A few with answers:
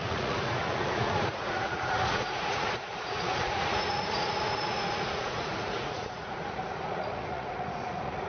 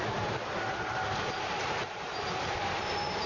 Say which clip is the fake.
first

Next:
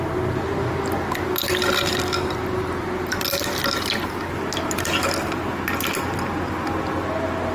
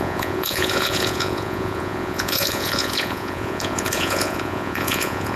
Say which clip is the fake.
second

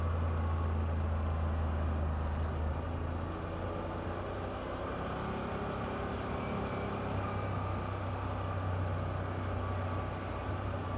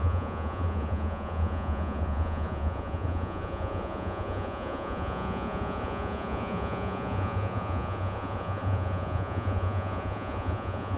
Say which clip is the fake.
second